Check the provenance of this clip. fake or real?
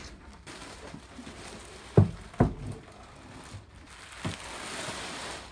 real